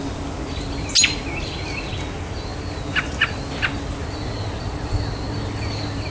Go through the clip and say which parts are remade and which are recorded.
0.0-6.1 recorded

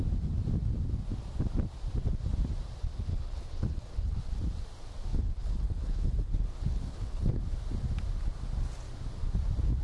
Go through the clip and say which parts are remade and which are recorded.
0.0-3.1 recorded; 3.1-4.2 remade; 4.2-5.1 recorded; 5.1-7.4 remade; 7.4-9.8 recorded

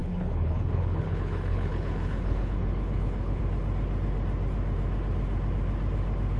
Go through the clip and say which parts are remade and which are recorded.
0.0-3.4 remade; 3.4-6.4 recorded

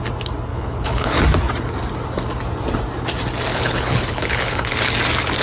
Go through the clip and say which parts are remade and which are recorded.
0.0-0.5 recorded; 0.5-1.2 remade; 1.2-3.5 recorded; 3.5-4.9 remade; 4.9-5.4 recorded